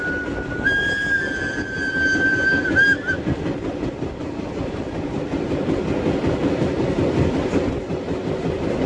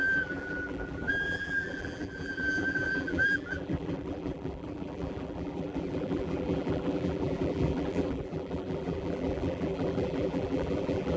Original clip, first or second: first